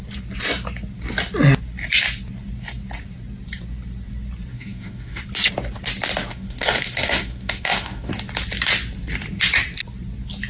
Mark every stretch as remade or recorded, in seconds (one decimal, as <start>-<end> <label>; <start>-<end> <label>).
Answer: 0.0-4.5 recorded; 4.5-5.2 remade; 5.2-6.3 recorded; 6.3-8.1 remade; 8.1-10.5 recorded